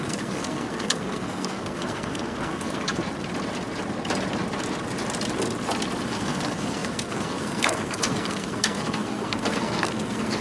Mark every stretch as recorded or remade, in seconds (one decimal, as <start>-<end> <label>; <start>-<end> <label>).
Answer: 0.0-3.0 remade; 3.0-6.1 recorded; 6.1-10.4 remade